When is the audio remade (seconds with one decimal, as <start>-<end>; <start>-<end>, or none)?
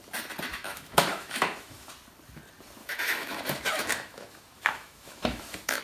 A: 0.5-1.9; 2.8-5.8